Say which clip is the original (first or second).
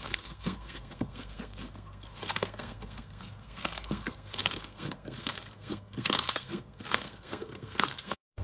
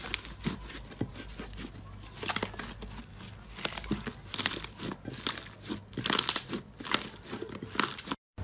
second